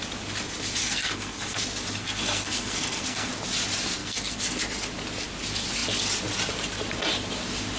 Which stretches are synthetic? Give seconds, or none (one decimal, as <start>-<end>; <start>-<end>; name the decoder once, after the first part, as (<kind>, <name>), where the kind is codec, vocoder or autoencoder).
0.8-1.6 (codec, SNAC); 2.0-3.3; 4.0-4.6